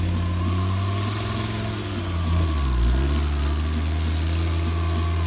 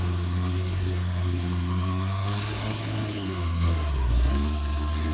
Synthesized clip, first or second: second